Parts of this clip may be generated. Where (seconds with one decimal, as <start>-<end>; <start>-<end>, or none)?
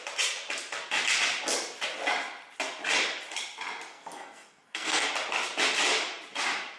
3.9-5.1